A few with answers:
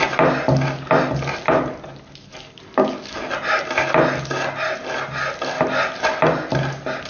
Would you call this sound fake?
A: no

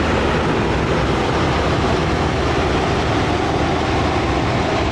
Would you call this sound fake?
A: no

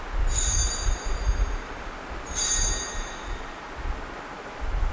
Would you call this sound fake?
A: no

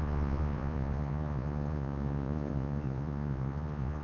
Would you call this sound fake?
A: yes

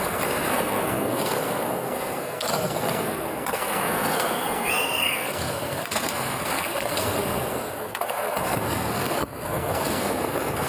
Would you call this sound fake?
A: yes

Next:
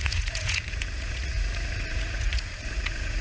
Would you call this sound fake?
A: yes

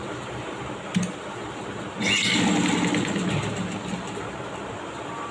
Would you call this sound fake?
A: no